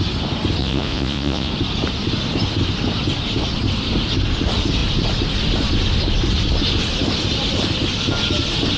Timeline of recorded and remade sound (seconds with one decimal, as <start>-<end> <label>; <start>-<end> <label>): 0.0-0.6 recorded; 0.6-1.5 remade; 1.5-8.8 recorded